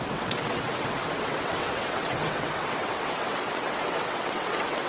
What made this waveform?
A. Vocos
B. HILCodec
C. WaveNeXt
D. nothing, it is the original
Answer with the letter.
C